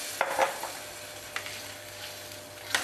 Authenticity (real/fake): real